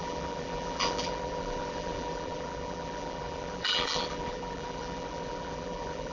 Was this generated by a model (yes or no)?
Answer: yes